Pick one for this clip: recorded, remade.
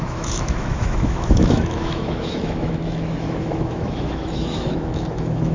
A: remade